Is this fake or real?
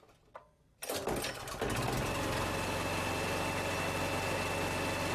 real